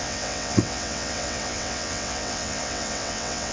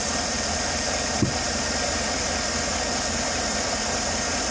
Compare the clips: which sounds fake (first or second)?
first